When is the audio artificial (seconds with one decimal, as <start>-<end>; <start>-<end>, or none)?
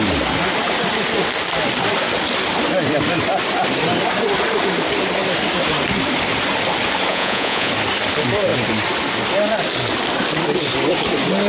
7.1-7.7